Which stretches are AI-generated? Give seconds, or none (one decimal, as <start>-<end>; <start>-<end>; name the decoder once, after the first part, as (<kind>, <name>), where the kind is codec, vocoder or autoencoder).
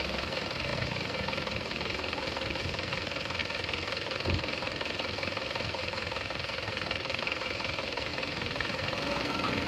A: 0.0-9.7 (codec, SNAC)